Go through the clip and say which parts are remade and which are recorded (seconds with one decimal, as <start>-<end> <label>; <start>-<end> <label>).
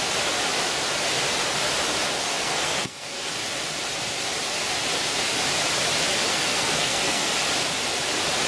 0.0-2.2 recorded; 2.2-3.3 remade; 3.3-6.3 recorded; 6.3-7.3 remade; 7.3-8.5 recorded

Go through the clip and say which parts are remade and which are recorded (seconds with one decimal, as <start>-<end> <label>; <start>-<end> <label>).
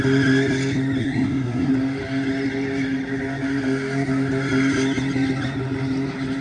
0.0-1.0 recorded; 1.0-1.7 remade; 1.7-6.4 recorded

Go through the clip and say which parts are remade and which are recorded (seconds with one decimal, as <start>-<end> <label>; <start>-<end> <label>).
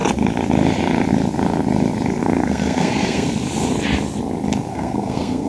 0.0-2.2 recorded; 2.2-3.4 remade; 3.4-4.7 recorded; 4.7-5.5 remade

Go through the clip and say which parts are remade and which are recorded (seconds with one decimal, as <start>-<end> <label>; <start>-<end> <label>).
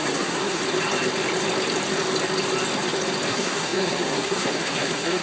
0.0-0.6 remade; 0.6-3.3 recorded; 3.3-5.2 remade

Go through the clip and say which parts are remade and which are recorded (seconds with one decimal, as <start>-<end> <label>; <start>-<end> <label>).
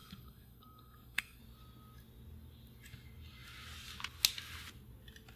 0.0-1.4 remade; 1.4-5.4 recorded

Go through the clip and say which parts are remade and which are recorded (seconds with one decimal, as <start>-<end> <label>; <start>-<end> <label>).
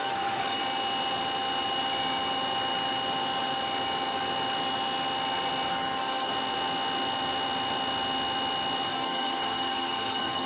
0.0-0.6 remade; 0.6-5.7 recorded; 5.7-6.3 remade; 6.3-8.9 recorded; 8.9-10.5 remade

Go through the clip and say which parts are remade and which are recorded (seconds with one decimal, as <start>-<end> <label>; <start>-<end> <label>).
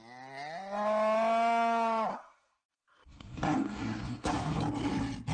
0.0-2.1 recorded; 2.1-4.6 remade; 4.6-5.3 recorded